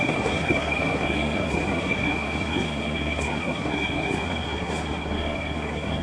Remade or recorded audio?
remade